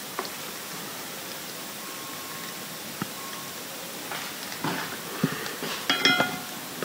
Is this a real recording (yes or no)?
yes